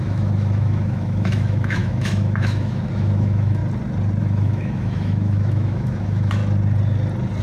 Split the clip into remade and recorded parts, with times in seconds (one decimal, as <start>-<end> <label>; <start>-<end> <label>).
0.0-3.6 remade; 3.6-4.2 recorded; 4.2-6.4 remade; 6.4-7.4 recorded